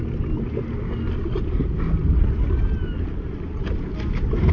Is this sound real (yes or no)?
yes